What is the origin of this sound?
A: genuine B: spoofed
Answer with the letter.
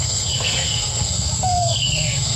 B